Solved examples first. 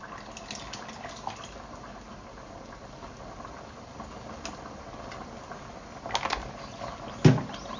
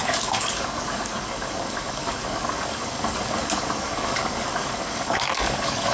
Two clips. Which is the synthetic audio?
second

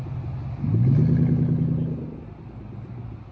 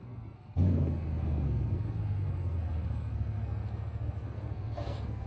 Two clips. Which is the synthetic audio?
second